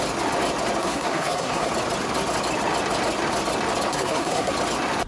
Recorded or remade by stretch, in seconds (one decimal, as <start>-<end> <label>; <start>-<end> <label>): 0.0-0.8 recorded; 0.8-1.7 remade; 1.7-3.9 recorded; 3.9-4.5 remade; 4.5-5.1 recorded